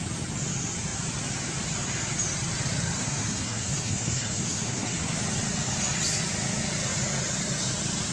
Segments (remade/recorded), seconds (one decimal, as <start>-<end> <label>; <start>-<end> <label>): 0.0-3.0 recorded; 3.0-5.2 remade; 5.2-8.1 recorded